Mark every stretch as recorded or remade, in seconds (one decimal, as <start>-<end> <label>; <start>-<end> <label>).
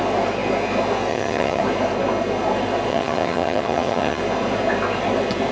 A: 0.0-1.1 recorded; 1.1-1.6 remade; 1.6-2.9 recorded; 2.9-4.2 remade; 4.2-5.5 recorded